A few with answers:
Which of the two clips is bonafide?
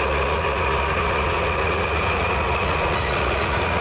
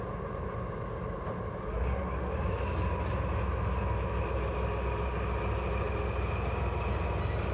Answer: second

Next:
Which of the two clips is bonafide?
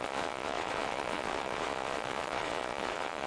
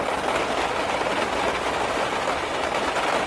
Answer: second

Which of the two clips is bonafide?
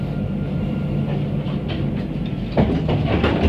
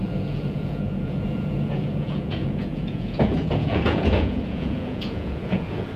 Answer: first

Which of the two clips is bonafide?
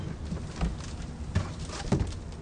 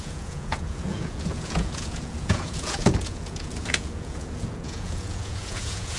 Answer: first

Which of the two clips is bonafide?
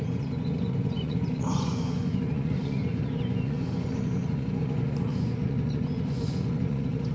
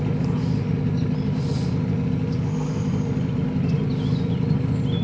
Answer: second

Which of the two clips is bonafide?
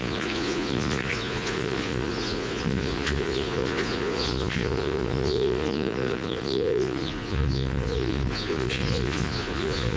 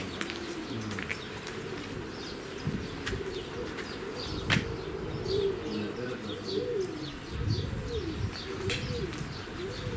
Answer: second